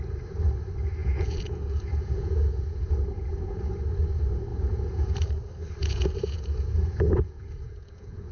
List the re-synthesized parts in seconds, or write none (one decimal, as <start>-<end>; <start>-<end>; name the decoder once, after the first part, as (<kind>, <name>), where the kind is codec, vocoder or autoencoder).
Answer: 1.0-3.7 (vocoder, Vocos); 4.5-5.3; 5.8-8.3